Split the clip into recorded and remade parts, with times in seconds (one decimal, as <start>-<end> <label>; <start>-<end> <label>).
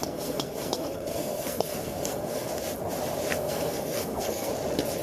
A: 0.0-2.5 remade; 2.5-3.3 recorded; 3.3-4.5 remade; 4.5-5.0 recorded